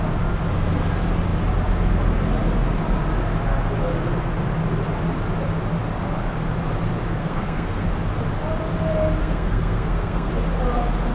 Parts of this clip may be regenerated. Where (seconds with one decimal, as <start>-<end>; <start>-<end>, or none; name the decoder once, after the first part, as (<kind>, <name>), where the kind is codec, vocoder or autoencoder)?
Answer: 7.2-7.9 (codec, SNAC); 9.2-10.3